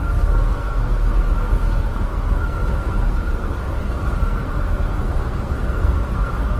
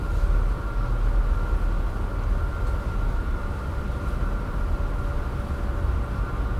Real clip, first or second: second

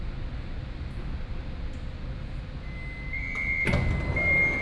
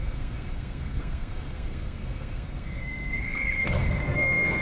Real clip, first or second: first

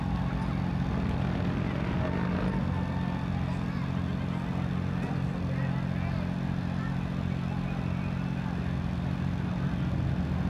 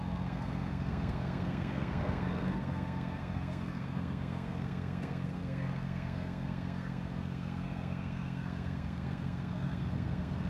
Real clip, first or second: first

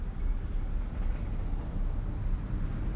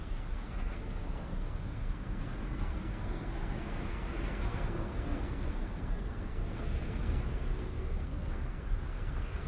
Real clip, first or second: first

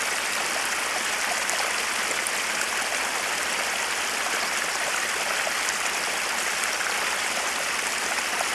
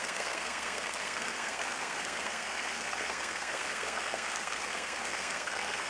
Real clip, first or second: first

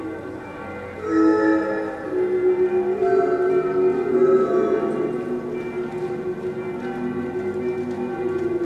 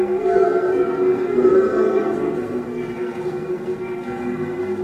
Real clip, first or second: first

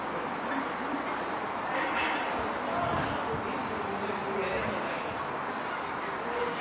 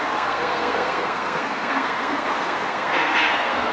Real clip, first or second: first